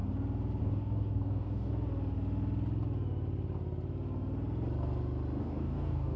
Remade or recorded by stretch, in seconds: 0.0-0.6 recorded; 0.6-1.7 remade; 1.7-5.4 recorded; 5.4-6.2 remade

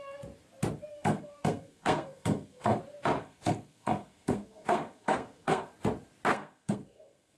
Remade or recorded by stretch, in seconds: 0.0-0.9 recorded; 0.9-2.8 remade; 2.8-3.2 recorded; 3.2-5.7 remade; 5.7-6.3 recorded; 6.3-7.4 remade

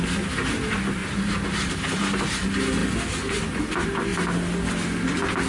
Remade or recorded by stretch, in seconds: 0.0-1.0 recorded; 1.0-2.0 remade; 2.0-5.5 recorded

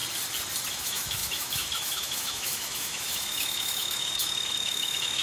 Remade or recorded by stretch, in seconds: 0.0-0.7 recorded; 0.7-5.2 remade

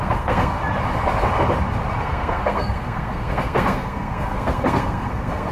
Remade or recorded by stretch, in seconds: 0.0-0.6 remade; 0.6-2.0 recorded; 2.0-5.5 remade

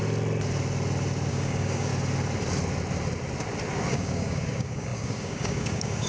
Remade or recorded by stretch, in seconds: 0.0-1.3 recorded; 1.3-1.9 remade; 1.9-3.9 recorded; 3.9-6.1 remade